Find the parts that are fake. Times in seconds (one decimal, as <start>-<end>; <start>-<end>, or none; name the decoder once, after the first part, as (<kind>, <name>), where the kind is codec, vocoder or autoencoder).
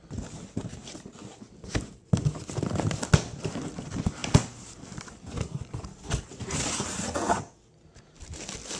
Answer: none